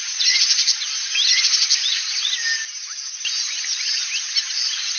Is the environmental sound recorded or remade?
recorded